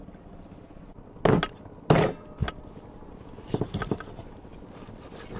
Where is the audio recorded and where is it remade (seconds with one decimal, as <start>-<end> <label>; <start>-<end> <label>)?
0.0-5.4 recorded